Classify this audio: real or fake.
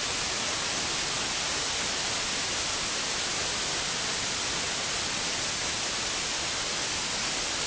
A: real